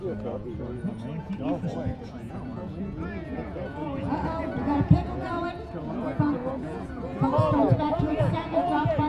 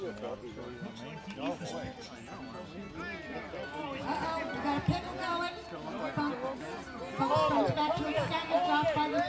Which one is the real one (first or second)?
second